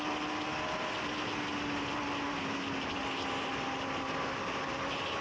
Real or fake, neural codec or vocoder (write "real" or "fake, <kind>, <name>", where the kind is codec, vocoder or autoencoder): real